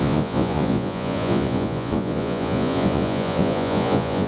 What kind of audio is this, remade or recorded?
remade